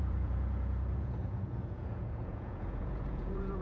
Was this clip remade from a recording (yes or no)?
yes